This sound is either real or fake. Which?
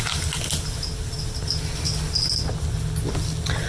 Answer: real